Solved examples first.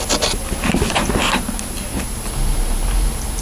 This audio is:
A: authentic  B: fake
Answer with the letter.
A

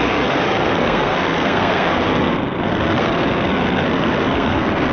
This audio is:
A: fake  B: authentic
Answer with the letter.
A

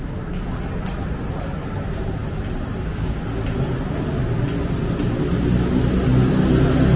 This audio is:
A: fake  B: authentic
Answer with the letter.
B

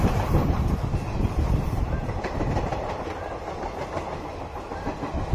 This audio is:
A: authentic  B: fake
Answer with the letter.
A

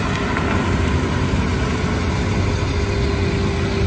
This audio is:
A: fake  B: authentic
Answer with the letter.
B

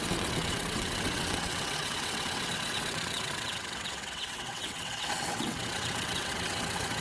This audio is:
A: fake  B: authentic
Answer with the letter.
A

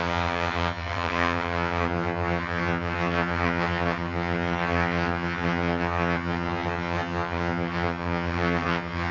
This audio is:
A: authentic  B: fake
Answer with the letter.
B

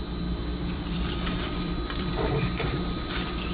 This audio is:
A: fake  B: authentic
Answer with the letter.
A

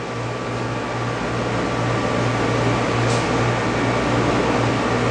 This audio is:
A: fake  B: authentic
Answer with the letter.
B